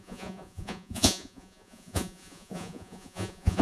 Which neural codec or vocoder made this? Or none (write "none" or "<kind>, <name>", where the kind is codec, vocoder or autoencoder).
vocoder, Vocos